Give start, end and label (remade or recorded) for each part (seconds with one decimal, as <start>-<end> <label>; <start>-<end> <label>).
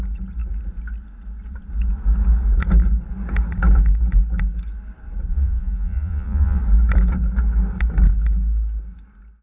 0.0-5.3 recorded; 5.3-6.6 remade; 6.6-9.4 recorded